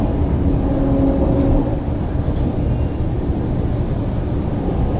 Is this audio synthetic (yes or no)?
no